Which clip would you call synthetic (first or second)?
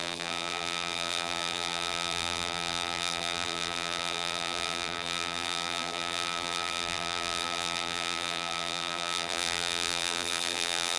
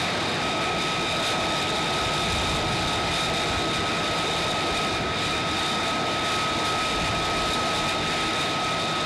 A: first